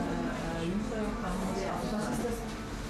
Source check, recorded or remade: recorded